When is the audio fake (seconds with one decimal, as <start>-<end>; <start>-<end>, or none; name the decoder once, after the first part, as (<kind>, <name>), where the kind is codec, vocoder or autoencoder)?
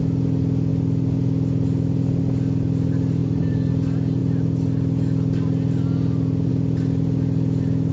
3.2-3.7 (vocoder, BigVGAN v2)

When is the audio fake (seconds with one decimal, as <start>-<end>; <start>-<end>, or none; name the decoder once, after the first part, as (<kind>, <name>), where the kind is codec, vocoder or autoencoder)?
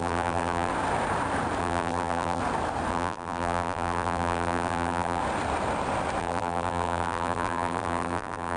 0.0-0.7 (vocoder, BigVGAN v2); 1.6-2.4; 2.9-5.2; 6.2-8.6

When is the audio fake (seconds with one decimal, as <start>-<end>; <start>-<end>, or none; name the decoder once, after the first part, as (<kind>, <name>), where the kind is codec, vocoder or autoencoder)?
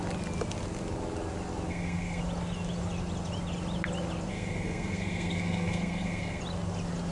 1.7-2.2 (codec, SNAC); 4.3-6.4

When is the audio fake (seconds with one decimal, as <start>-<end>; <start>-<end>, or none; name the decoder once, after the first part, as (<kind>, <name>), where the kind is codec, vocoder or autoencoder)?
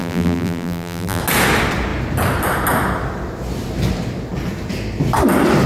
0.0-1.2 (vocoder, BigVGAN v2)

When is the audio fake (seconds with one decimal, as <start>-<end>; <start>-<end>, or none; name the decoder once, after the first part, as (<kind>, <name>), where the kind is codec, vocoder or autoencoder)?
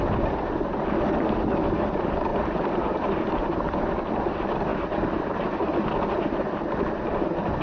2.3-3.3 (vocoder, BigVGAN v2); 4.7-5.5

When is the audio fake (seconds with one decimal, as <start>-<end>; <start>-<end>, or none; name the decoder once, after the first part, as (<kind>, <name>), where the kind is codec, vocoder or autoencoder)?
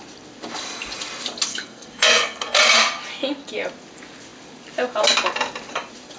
1.5-2.6 (codec, SNAC)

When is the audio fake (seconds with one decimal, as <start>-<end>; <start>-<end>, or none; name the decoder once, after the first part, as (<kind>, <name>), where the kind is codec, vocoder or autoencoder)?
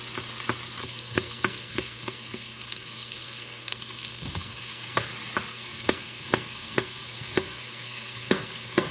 0.8-5.1 (codec, SNAC); 5.5-8.9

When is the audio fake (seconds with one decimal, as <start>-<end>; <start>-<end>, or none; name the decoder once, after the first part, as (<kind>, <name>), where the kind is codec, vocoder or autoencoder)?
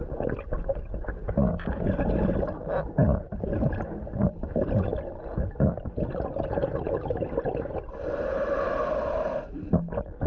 none